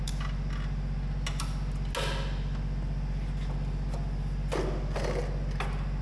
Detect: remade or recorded recorded